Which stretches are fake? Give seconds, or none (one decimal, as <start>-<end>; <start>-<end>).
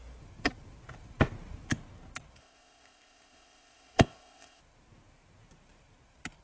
2.4-4.6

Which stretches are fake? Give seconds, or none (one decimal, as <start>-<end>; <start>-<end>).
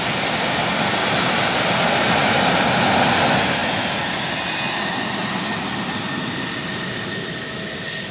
none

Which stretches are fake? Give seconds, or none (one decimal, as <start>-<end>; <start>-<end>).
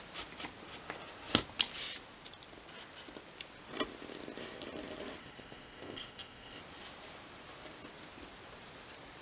5.2-6.6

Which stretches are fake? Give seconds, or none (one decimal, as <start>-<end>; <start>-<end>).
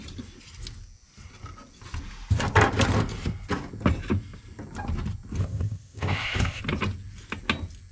5.4-6.6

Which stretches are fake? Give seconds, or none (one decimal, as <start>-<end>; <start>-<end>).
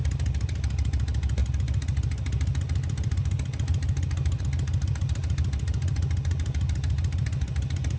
none